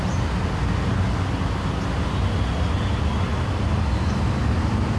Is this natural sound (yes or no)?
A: yes